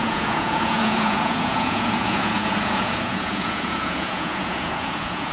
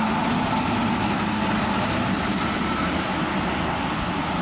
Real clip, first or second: second